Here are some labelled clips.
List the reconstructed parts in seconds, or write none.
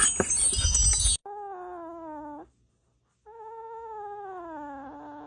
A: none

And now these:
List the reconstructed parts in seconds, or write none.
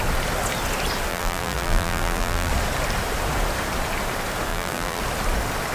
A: 1.1-2.5 (vocoder, BigVGAN v2); 4.5-5.0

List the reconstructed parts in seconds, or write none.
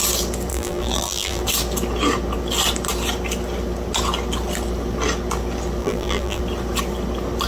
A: 0.5-1.4 (vocoder, BigVGAN v2); 5.8-6.4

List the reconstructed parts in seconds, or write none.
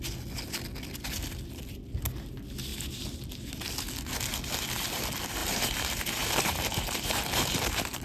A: 5.4-8.0 (vocoder, BigVGAN v2)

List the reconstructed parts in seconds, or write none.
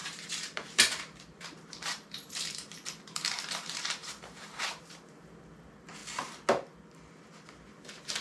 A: 0.0-4.6 (vocoder, BigVGAN v2)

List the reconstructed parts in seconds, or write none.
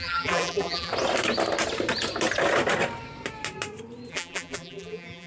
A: 0.0-0.9 (vocoder, BigVGAN v2); 4.1-5.3